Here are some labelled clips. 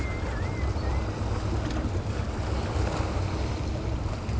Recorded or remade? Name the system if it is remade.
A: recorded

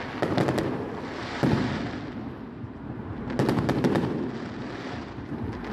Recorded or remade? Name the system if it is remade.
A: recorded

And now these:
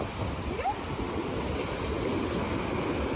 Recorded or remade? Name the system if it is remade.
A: recorded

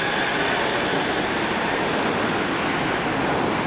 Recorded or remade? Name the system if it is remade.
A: recorded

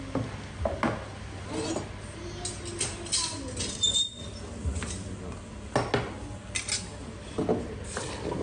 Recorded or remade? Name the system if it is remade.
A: recorded